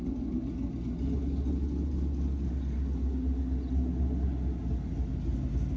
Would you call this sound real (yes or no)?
yes